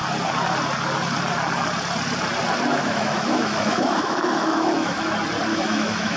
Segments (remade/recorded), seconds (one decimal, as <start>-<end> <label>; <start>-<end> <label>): 0.0-2.7 recorded; 2.7-5.0 remade; 5.0-5.5 recorded; 5.5-6.2 remade